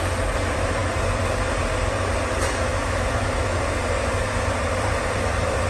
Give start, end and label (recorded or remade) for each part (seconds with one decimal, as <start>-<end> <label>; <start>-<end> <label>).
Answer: 0.0-2.7 recorded; 2.7-3.6 remade; 3.6-5.7 recorded